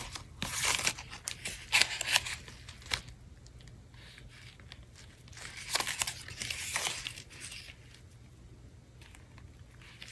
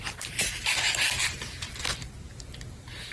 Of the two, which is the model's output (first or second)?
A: second